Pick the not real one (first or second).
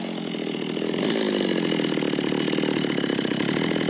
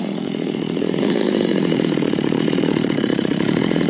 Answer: second